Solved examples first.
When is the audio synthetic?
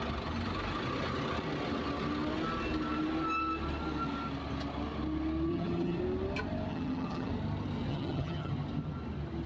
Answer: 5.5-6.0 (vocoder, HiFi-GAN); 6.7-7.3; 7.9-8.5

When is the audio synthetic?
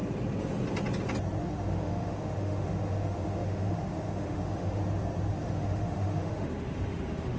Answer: 1.4-4.8 (autoencoder, DAC-VAE); 5.3-7.4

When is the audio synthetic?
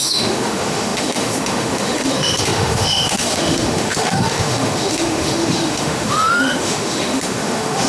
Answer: 0.0-7.9 (autoencoder, DAC-VAE)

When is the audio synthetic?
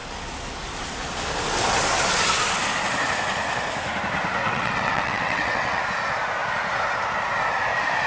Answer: 4.4-5.8 (vocoder, WaveNeXt)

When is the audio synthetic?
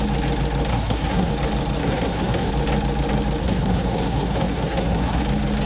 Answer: 0.7-1.3 (codec, SNAC); 1.8-2.5; 3.4-5.2